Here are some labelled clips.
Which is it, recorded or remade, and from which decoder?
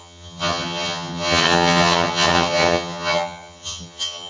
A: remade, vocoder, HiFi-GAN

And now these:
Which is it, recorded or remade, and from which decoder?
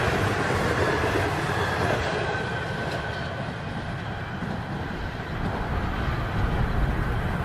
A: recorded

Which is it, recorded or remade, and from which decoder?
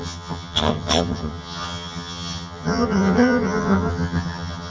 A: remade, vocoder, HiFi-GAN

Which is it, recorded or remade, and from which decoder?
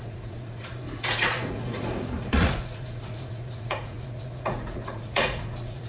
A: remade, vocoder, Vocos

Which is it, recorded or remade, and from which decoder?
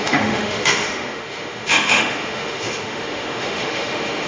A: remade, autoencoder, DAC-VAE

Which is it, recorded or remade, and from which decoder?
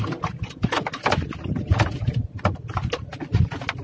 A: recorded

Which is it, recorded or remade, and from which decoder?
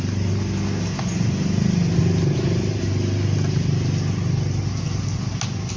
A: recorded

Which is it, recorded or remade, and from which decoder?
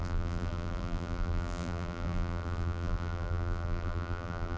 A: remade, vocoder, BigVGAN v2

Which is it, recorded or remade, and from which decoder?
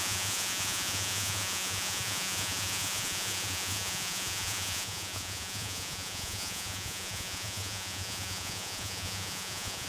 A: remade, vocoder, Vocos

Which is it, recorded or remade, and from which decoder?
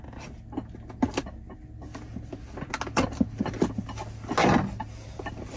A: recorded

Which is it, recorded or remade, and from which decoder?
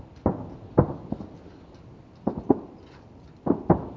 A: recorded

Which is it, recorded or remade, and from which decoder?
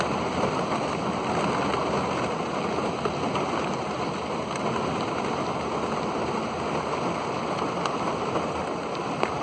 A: recorded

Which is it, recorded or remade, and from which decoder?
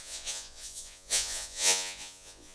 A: remade, vocoder, Vocos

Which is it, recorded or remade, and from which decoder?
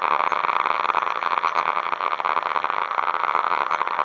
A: remade, vocoder, HiFi-GAN